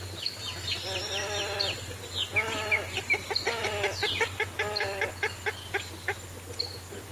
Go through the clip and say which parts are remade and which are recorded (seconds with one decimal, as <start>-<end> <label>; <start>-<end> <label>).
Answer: 0.0-7.1 recorded